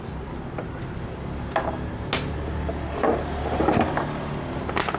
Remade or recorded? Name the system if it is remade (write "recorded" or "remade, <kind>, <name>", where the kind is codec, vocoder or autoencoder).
recorded